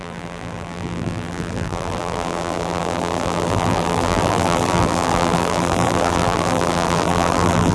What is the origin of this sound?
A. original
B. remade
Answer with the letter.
B